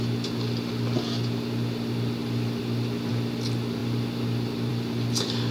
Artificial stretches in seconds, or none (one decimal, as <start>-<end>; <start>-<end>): none